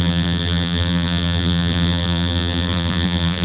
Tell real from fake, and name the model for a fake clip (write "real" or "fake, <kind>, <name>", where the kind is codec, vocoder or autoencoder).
fake, vocoder, BigVGAN v2